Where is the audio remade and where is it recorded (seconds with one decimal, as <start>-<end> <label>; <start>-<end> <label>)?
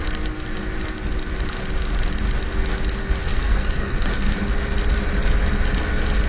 0.0-3.2 recorded; 3.2-4.4 remade; 4.4-6.3 recorded